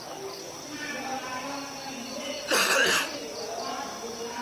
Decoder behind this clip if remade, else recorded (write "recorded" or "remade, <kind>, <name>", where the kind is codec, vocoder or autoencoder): recorded